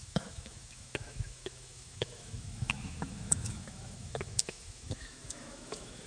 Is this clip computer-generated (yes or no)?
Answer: yes